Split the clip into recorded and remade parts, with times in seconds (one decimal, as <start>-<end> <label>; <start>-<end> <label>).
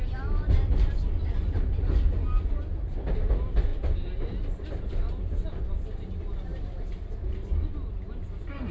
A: 0.0-8.7 recorded